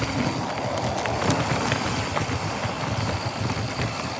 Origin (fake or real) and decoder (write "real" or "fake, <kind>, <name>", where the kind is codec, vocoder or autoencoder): real